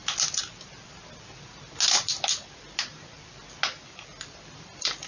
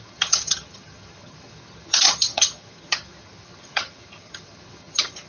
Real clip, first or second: first